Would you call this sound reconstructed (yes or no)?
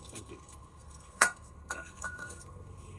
yes